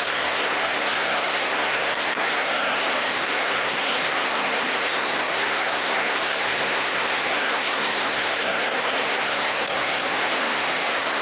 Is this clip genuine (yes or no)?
no